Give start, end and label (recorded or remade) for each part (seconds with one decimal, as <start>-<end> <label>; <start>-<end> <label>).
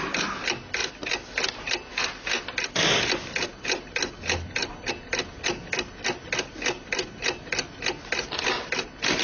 0.0-9.2 recorded